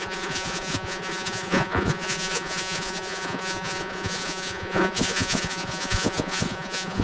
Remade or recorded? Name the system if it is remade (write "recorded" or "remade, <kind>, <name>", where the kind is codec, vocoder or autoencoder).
remade, vocoder, Vocos